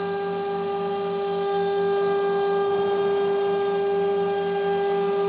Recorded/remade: recorded